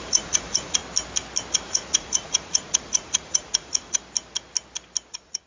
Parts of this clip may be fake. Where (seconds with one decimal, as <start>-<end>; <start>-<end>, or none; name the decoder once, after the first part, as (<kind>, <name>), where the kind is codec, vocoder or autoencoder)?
0.0-0.8 (vocoder, Vocos); 1.5-4.0; 5.1-5.5